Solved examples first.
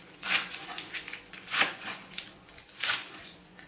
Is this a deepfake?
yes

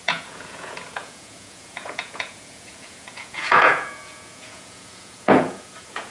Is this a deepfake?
yes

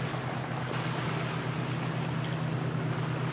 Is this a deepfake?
no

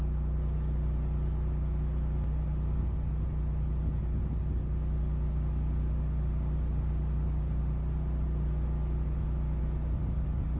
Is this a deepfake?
no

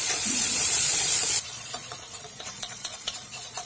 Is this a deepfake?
yes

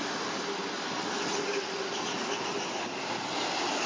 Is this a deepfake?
no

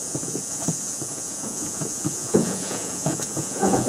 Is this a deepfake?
yes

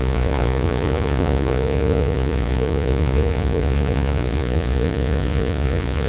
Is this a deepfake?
yes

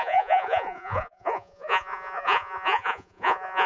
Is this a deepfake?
yes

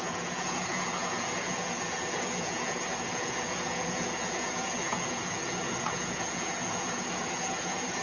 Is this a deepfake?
yes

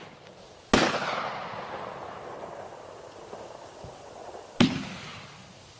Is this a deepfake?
no